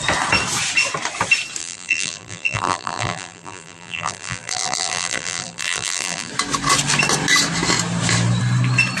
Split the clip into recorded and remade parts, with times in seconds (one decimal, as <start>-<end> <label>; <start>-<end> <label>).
0.0-1.6 recorded; 1.6-6.3 remade; 6.3-9.0 recorded